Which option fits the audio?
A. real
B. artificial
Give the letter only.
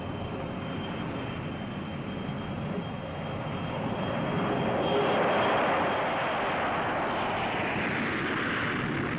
A